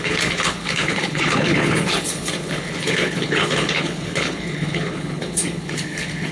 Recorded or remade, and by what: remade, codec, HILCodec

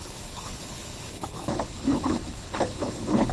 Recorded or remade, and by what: remade, codec, HILCodec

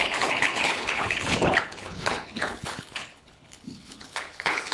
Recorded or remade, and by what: remade, codec, HILCodec